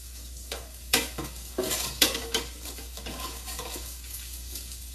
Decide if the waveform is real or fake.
fake